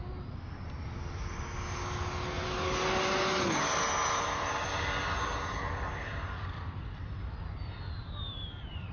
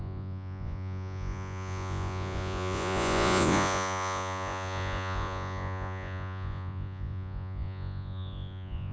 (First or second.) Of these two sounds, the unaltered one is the first